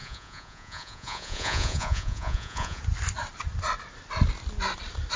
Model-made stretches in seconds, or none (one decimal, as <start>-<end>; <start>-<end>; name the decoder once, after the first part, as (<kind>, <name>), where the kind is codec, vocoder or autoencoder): 0.0-2.8 (vocoder, Vocos)